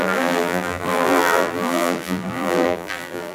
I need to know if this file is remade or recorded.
remade